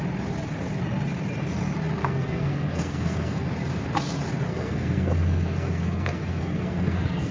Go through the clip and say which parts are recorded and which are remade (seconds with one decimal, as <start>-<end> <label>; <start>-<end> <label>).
0.0-2.0 recorded; 2.0-3.5 remade; 3.5-4.5 recorded; 4.5-7.3 remade